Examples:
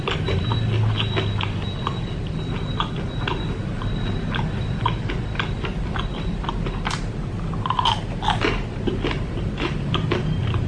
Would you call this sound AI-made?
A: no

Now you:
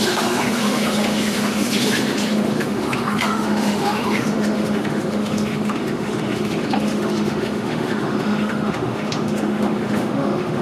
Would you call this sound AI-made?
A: yes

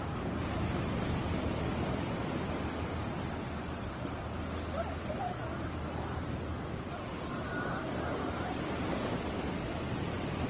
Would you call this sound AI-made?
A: no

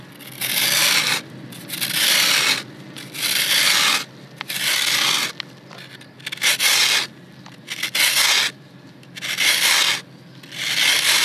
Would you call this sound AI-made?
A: no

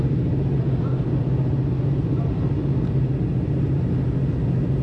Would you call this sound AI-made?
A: no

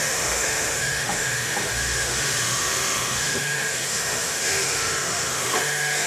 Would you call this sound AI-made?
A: yes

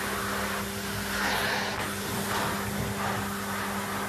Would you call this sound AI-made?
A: no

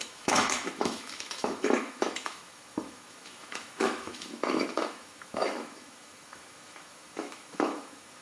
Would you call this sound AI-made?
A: yes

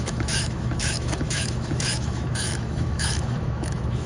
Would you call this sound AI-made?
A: yes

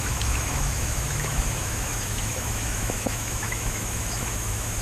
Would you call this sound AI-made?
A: yes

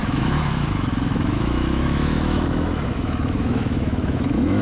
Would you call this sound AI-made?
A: yes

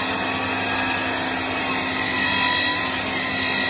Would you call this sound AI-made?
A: no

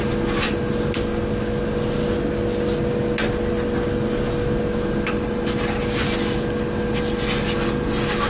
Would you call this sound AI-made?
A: no